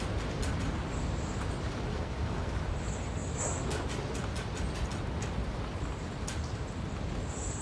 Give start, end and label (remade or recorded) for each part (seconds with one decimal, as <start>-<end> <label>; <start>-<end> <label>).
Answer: 0.0-1.9 recorded; 1.9-2.5 remade; 2.5-7.6 recorded